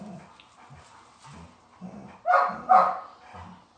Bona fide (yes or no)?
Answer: yes